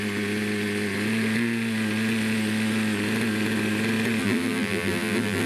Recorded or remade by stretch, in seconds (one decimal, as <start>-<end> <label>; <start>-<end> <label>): 0.0-4.2 recorded; 4.2-5.5 remade